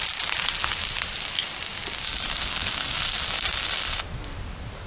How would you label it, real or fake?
real